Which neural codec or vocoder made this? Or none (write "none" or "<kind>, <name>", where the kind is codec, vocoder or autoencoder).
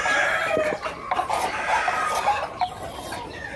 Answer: none